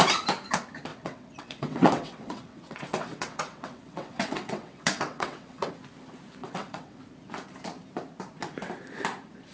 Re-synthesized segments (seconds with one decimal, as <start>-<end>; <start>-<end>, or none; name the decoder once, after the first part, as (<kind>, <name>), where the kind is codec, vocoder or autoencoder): 0.9-5.7 (vocoder, WaveNeXt); 6.4-7.0